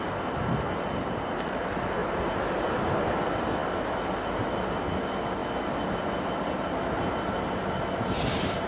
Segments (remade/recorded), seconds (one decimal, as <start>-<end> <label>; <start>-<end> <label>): 0.0-8.7 recorded